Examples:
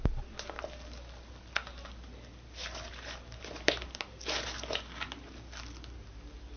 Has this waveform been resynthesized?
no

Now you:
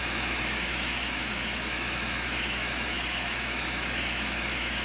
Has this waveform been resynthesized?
yes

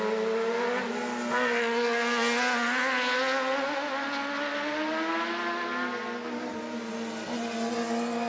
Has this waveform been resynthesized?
no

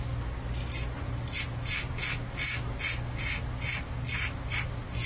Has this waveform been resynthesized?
no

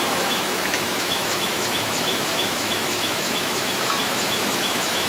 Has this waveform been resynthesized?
yes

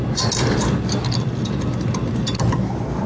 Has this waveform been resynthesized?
no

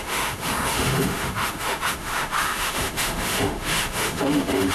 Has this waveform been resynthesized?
yes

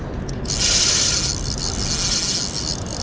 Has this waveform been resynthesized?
no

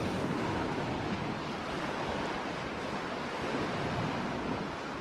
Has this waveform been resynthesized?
no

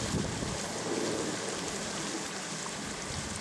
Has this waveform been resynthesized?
no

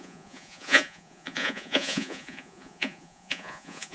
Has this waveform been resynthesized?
yes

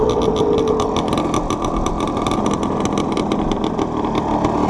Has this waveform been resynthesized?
no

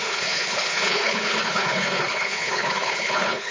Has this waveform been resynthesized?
yes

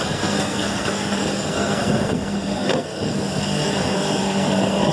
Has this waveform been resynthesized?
yes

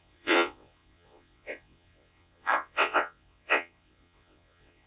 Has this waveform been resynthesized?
yes